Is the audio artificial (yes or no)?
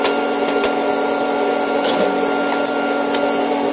no